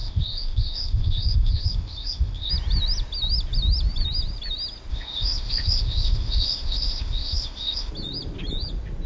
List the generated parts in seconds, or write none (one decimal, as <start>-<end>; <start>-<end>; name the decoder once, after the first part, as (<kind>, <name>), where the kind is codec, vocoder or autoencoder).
0.0-2.5 (codec, ZipCodec); 4.9-7.9

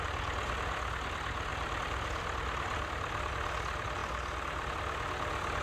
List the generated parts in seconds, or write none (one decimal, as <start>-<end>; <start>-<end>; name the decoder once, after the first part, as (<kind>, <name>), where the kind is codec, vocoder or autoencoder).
1.5-3.3 (vocoder, BigVGAN v2); 4.0-4.7

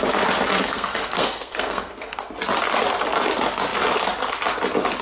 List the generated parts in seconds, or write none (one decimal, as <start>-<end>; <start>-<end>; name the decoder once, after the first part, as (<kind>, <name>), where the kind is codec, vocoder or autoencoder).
0.6-2.3 (codec, SNAC)

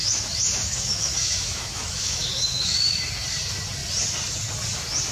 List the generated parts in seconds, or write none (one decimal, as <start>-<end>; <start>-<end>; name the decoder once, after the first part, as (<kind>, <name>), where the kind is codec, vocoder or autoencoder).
0.0-3.1 (autoencoder, DAC-VAE)

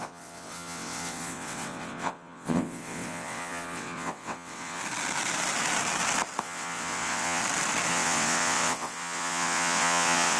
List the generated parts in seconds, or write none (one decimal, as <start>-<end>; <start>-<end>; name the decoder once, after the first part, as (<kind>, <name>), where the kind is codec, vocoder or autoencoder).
0.0-4.8 (vocoder, WaveNeXt); 6.4-7.4; 7.9-10.4

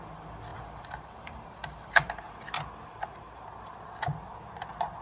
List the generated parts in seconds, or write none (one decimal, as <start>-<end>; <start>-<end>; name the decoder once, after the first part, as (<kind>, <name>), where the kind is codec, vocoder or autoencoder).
0.5-2.1 (vocoder, BigVGAN v2)

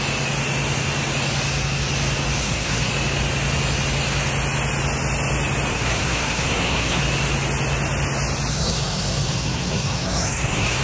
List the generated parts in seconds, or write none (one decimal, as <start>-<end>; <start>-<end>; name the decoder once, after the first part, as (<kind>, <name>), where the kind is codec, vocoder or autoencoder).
2.4-2.9 (codec, SNAC); 5.7-7.0; 8.5-10.8